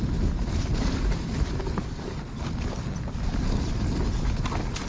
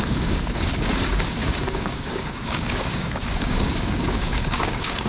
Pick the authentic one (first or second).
first